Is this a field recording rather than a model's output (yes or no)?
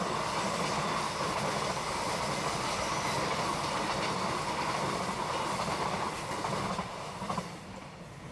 yes